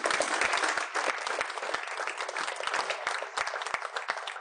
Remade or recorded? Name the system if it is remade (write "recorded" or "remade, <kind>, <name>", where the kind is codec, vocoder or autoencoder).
recorded